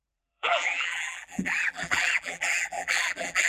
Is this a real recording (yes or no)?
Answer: no